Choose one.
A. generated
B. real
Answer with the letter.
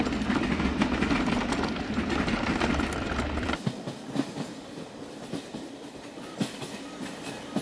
B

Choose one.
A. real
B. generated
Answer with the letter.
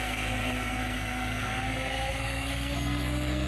B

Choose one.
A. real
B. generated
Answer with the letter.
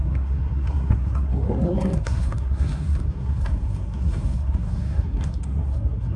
B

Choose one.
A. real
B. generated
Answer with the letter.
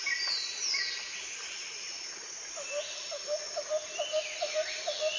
A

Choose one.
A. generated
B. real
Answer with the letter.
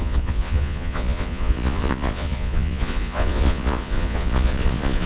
A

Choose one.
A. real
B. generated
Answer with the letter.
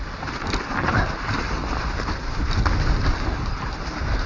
A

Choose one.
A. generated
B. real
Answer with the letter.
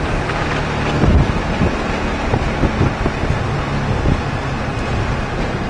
B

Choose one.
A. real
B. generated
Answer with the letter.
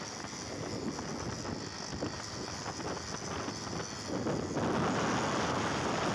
A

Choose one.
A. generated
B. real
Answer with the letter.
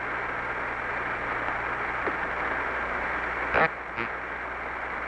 B